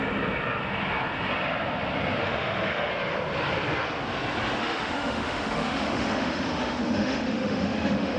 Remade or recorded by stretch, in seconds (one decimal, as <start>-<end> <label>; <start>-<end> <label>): 0.0-2.2 recorded; 2.2-2.9 remade; 2.9-4.6 recorded; 4.6-8.2 remade